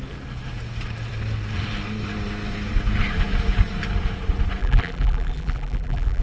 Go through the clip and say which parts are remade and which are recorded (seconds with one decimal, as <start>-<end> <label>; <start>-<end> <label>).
0.0-4.6 recorded; 4.6-6.2 remade

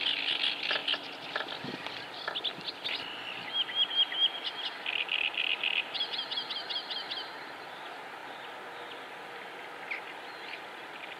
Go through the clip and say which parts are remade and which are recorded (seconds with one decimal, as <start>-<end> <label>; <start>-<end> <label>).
0.0-11.2 recorded

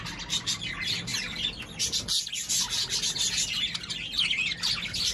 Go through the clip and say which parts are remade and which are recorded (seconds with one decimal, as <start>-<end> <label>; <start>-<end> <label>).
0.0-5.1 recorded